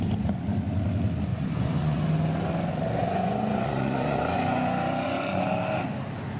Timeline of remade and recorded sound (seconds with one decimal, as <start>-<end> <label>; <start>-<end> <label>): 0.0-1.3 recorded; 1.3-2.0 remade; 2.0-3.0 recorded; 3.0-5.5 remade; 5.5-6.4 recorded